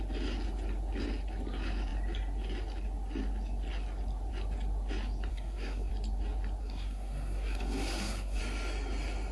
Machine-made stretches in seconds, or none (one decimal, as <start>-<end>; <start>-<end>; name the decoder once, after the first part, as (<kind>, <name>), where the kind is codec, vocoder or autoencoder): 5.3-5.9 (codec, SNAC); 6.6-8.4